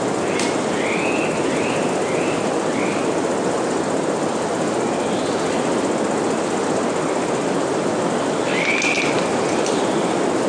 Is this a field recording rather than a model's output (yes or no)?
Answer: yes